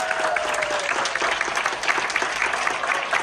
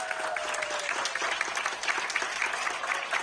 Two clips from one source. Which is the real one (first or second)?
second